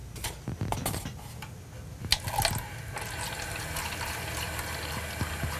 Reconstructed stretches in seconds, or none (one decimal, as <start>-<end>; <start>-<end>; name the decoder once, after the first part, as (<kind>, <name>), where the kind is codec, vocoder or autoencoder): none